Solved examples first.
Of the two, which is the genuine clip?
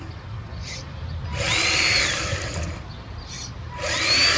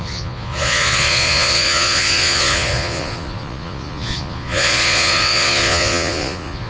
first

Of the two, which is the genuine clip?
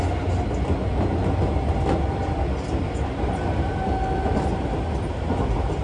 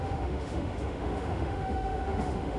first